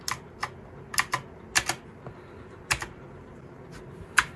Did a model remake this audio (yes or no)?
no